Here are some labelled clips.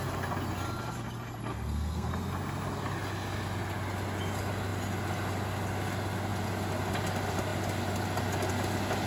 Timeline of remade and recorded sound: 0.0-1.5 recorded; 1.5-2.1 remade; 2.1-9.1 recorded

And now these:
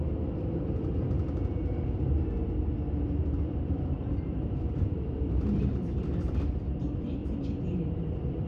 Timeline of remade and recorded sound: 0.0-3.2 recorded; 3.2-6.3 remade; 6.3-7.2 recorded; 7.2-8.5 remade

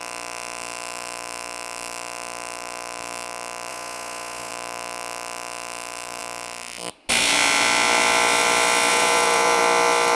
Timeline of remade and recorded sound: 0.0-3.7 recorded; 3.7-4.5 remade; 4.5-8.9 recorded; 8.9-9.6 remade; 9.6-10.2 recorded